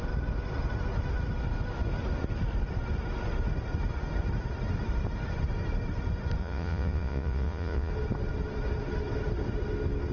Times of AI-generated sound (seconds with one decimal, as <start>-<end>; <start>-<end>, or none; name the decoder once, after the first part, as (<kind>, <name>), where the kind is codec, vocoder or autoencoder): 6.4-7.9 (vocoder, Vocos)